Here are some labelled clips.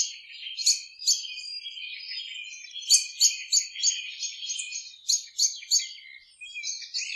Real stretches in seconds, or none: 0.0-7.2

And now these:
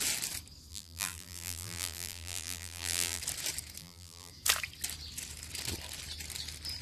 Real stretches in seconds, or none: 0.0-0.7; 3.2-3.8; 4.3-6.8

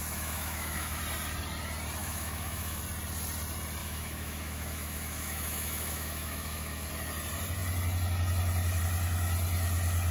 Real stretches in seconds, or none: 1.0-2.0; 2.8-3.8; 6.9-10.1

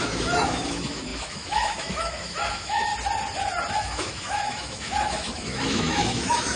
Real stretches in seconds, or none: 2.9-3.7

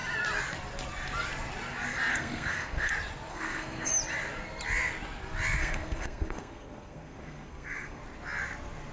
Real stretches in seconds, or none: 0.0-2.1; 2.9-3.3; 3.9-5.6; 8.0-8.9

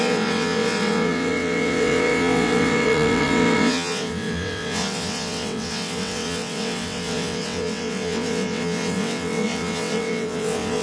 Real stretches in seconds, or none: none

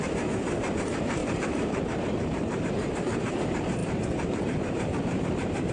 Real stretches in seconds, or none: none

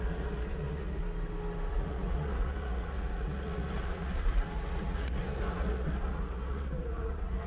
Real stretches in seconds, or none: 1.0-1.7